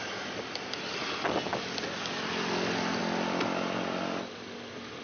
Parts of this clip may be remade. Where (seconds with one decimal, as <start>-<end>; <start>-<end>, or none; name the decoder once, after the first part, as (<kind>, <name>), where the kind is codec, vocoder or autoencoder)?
none

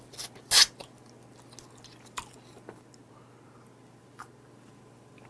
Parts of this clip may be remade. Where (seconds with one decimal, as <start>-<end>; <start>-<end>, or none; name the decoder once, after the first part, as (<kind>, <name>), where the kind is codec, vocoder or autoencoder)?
none

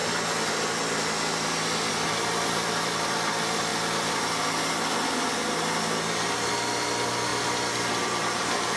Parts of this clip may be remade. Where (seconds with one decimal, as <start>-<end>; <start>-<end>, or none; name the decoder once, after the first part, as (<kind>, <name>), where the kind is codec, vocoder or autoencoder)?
1.9-3.7 (vocoder, BigVGAN v2); 6.5-7.3; 7.9-8.8

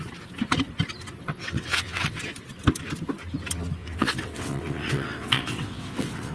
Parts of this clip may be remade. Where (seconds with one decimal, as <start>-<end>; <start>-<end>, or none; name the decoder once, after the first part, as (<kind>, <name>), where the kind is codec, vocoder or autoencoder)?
1.2-2.2 (vocoder, WaveNeXt); 3.8-6.3

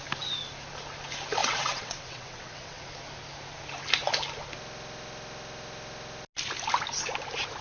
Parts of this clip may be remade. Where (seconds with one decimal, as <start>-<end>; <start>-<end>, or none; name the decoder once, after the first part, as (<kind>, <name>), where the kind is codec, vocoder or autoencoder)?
1.4-2.8 (vocoder, WaveNeXt)

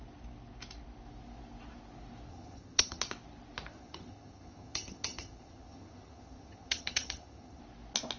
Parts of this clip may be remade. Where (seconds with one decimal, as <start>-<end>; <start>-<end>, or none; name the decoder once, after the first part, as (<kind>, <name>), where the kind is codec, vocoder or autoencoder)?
2.3-3.0 (vocoder, HiFi-GAN); 3.7-7.6

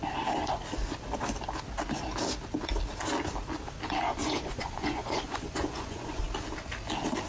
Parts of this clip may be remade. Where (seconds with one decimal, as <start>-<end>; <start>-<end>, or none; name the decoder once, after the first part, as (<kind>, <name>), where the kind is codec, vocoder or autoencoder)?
4.2-6.2 (vocoder, Vocos)